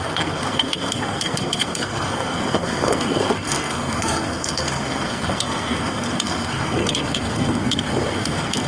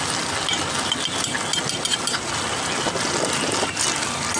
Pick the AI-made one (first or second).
first